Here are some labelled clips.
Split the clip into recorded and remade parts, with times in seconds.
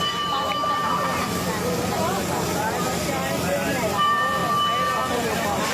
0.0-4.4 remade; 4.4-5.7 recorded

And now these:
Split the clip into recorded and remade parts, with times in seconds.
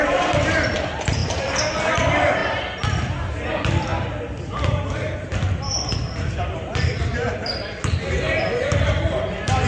0.0-1.2 remade; 1.2-1.8 recorded; 1.8-2.4 remade; 2.4-3.5 recorded; 3.5-3.9 remade; 3.9-6.4 recorded; 6.4-9.7 remade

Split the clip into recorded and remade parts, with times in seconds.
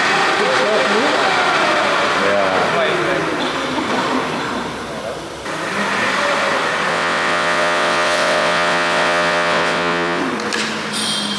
0.0-6.9 recorded; 6.9-10.2 remade; 10.2-11.4 recorded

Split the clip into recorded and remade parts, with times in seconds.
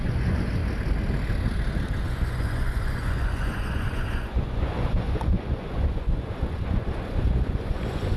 0.0-0.6 remade; 0.6-2.0 recorded; 2.0-8.2 remade